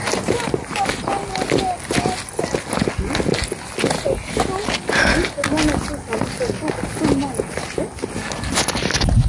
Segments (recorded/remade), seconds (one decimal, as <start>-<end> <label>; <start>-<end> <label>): 0.0-9.3 recorded

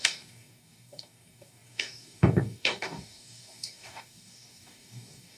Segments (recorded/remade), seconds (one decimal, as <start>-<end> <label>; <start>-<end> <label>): 0.0-5.4 remade